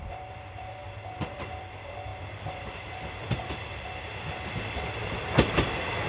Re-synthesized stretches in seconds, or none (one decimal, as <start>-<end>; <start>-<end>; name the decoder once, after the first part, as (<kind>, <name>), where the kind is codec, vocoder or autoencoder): 0.0-6.1 (vocoder, BigVGAN v2)